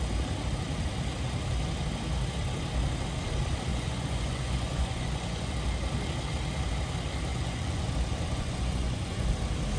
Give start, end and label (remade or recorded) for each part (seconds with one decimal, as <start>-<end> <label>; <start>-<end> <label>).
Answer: 0.0-3.7 recorded; 3.7-5.5 remade; 5.5-7.3 recorded; 7.3-7.9 remade; 7.9-8.3 recorded; 8.3-9.3 remade; 9.3-9.8 recorded